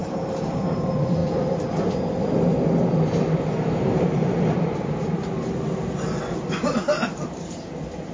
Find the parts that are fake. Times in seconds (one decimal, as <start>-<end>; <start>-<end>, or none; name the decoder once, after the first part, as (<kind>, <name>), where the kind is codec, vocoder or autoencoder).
0.0-1.2 (vocoder, BigVGAN v2); 3.6-8.1